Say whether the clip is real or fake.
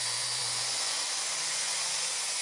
fake